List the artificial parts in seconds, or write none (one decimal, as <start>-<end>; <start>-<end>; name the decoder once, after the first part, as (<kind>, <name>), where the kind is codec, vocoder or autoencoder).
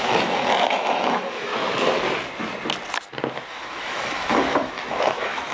0.0-1.5 (autoencoder, DAC-VAE); 3.5-5.5